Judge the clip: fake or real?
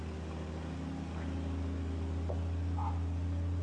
real